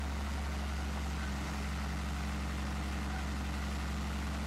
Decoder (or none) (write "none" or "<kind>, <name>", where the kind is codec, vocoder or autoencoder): none